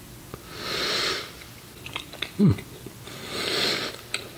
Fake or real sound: fake